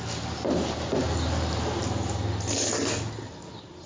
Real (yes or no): yes